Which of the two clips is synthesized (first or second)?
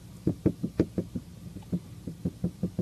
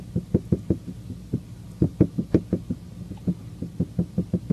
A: first